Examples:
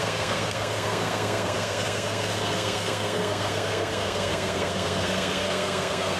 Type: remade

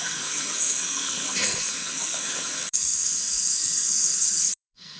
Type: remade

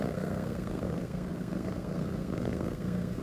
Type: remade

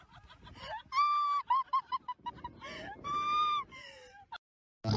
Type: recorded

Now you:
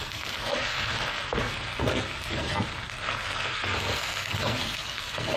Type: remade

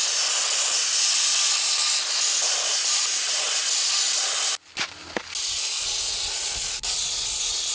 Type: recorded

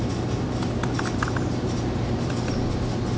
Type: recorded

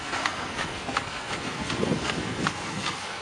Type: remade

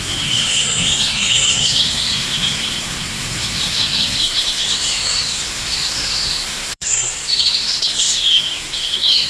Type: remade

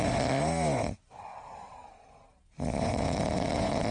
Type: recorded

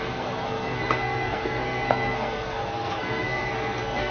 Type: remade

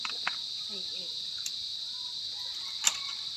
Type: recorded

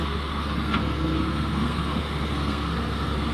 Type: remade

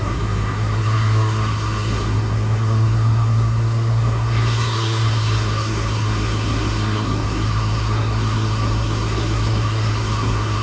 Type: remade